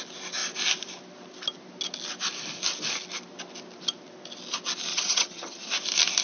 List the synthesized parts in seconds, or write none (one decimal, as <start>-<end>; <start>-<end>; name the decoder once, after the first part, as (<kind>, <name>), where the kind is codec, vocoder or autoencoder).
4.9-5.7 (vocoder, HiFi-GAN)